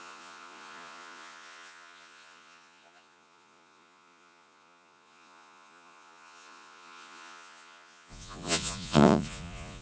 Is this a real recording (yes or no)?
no